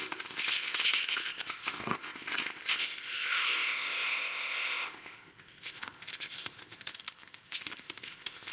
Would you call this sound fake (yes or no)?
yes